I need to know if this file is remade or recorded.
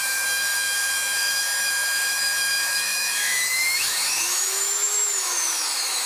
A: remade